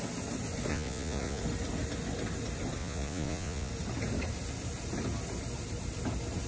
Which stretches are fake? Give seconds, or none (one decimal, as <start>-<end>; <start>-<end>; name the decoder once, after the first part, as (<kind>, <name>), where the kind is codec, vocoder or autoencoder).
0.7-1.4 (vocoder, Vocos); 2.8-3.7